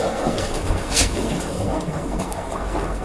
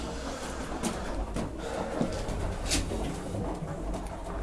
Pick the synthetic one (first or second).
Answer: first